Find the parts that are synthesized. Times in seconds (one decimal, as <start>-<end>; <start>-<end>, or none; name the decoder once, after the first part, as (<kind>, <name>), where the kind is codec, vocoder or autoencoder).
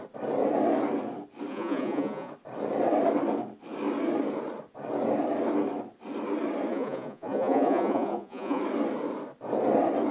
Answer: 1.5-2.3 (vocoder, Vocos); 6.7-8.6